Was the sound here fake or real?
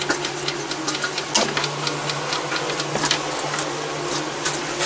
real